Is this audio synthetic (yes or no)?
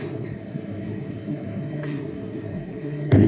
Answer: yes